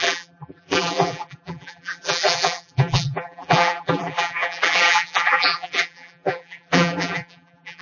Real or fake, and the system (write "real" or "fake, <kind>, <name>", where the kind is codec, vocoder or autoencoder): fake, vocoder, BigVGAN v2